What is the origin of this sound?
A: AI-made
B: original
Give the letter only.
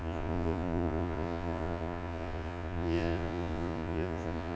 A